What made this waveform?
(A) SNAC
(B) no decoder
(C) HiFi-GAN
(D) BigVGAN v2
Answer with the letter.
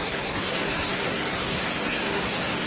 A